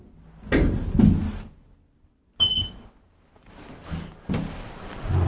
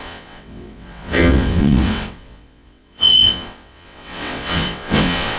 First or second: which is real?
first